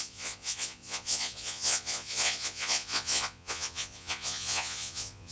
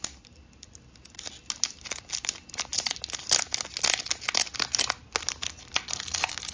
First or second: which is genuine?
second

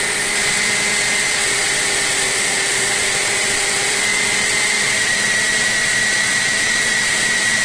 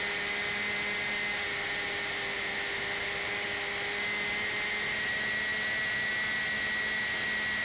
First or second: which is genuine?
second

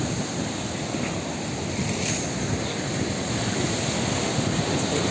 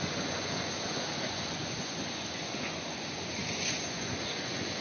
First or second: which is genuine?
first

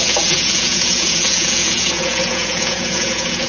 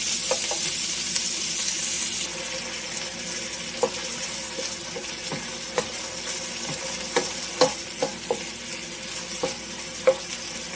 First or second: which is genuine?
second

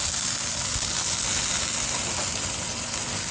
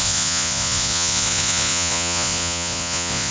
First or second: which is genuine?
first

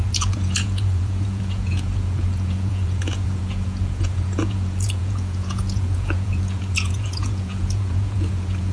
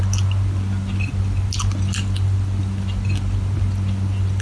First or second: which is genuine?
second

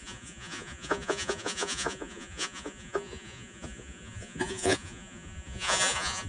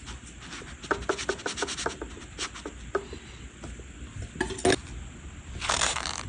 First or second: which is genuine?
second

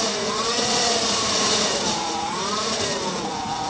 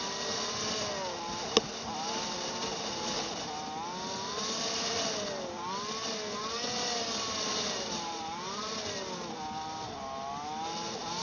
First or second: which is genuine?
second